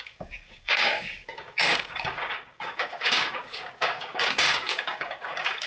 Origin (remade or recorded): remade